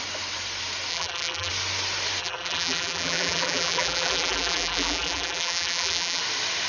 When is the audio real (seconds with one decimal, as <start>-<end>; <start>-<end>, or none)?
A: 0.0-0.9; 1.5-2.2; 6.2-6.7